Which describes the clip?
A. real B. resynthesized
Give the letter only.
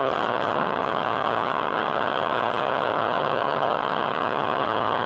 B